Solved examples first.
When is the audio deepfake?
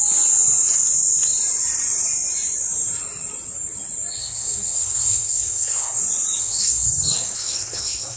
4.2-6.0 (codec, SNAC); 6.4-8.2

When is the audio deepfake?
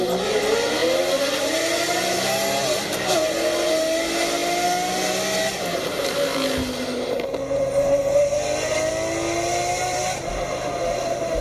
none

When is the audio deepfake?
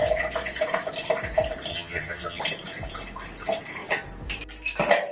1.7-2.4 (vocoder, HiFi-GAN)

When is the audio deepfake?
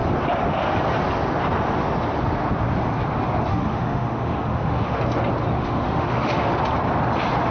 3.5-5.0 (autoencoder, DAC-VAE); 5.6-6.5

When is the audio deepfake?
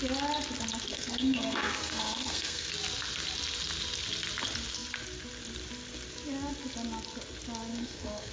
0.9-2.7 (codec, SNAC); 7.7-8.3